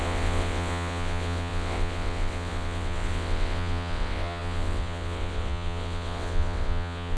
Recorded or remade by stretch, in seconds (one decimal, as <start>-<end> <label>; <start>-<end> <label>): 0.0-7.2 remade